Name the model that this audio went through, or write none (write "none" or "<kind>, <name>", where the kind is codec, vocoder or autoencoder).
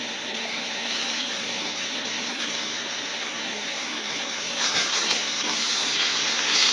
codec, SNAC